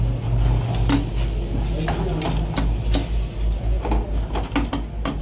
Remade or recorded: recorded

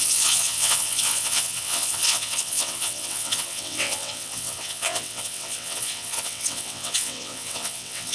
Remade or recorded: remade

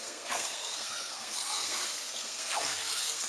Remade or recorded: remade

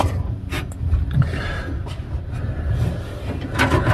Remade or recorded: recorded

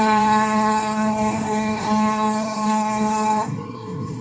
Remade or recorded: remade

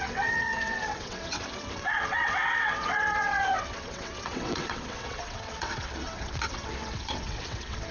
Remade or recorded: remade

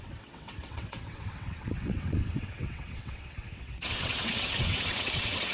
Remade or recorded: remade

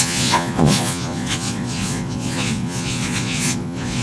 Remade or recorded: remade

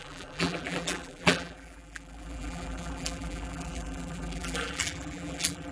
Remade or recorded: remade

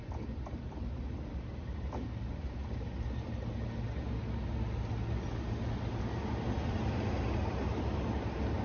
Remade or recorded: recorded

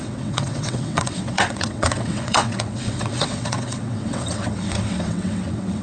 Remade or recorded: remade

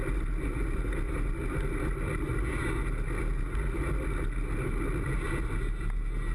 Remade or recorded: recorded